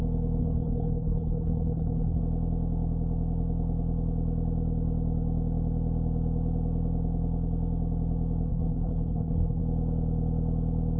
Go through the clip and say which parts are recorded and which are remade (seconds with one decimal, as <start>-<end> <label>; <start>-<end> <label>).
0.0-0.4 recorded; 0.4-2.2 remade; 2.2-8.5 recorded; 8.5-9.6 remade; 9.6-11.0 recorded